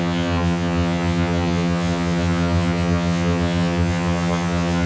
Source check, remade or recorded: remade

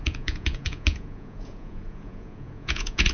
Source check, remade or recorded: remade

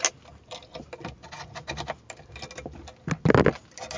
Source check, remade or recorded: recorded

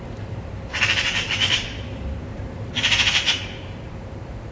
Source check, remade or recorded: remade